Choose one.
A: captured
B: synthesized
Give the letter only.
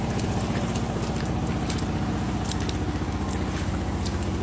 A